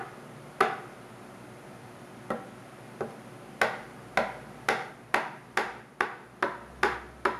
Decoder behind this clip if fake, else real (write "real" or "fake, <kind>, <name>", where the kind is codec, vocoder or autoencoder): real